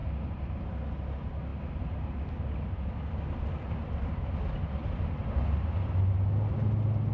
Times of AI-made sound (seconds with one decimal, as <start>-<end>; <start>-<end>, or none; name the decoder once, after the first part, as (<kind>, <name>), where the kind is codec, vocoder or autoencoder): 0.0-0.6 (vocoder, BigVGAN v2)